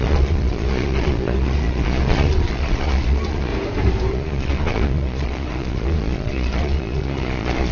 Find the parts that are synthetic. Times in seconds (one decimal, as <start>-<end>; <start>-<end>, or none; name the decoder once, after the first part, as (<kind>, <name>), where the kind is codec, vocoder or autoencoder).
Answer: 0.0-3.5 (vocoder, Vocos); 4.1-7.7

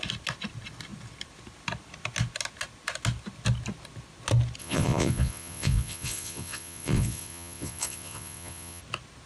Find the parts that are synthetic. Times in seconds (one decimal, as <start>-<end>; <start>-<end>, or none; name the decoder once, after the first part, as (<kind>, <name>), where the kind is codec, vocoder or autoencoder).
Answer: 4.6-8.8 (vocoder, Vocos)

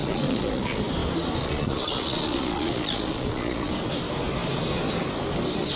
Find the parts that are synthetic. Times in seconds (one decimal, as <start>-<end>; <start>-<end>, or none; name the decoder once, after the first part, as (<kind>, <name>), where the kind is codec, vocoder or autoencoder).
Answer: 0.0-0.8 (vocoder, Vocos); 1.4-3.7

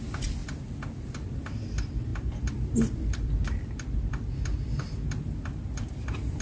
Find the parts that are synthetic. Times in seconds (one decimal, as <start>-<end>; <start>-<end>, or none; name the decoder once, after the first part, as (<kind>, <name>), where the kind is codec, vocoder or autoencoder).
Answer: none

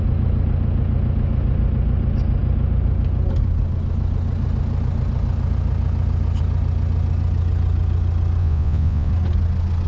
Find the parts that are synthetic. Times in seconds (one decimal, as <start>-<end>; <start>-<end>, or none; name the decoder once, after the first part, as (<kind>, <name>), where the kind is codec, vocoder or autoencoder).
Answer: 8.4-9.1 (vocoder, Vocos)

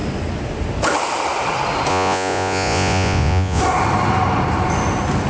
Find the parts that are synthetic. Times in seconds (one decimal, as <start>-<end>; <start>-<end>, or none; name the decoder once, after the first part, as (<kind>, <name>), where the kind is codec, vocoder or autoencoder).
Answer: 1.9-3.6 (vocoder, Vocos)

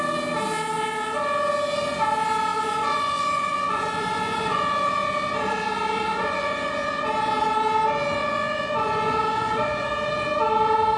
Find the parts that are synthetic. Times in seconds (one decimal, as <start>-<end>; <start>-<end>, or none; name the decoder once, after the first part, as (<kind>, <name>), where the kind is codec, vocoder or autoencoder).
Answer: 2.5-4.9 (vocoder, Vocos); 6.1-6.7; 8.2-9.9